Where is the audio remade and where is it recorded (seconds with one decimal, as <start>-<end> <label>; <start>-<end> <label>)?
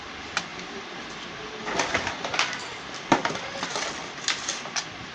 0.0-0.5 recorded; 0.5-1.1 remade; 1.1-2.3 recorded; 2.3-3.7 remade; 3.7-5.1 recorded